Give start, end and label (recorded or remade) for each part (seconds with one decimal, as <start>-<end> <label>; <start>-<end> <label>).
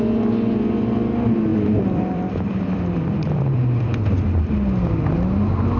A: 0.0-1.5 recorded; 1.5-4.9 remade; 4.9-5.8 recorded